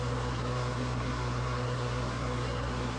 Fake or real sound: fake